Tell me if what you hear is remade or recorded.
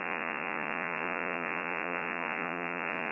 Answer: remade